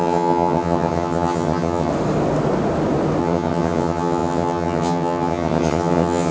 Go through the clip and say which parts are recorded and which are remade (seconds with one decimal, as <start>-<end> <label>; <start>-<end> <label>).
0.0-1.9 remade; 1.9-3.2 recorded; 3.2-6.3 remade